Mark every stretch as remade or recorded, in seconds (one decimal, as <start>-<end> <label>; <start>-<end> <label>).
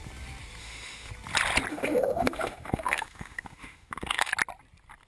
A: 0.0-0.6 recorded; 0.6-1.1 remade; 1.1-1.7 recorded; 1.7-4.3 remade; 4.3-5.1 recorded